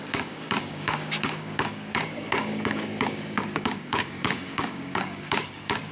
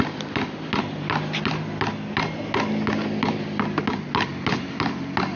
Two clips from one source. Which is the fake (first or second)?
first